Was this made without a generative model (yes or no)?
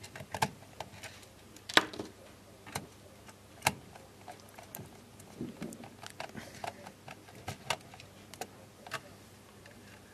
yes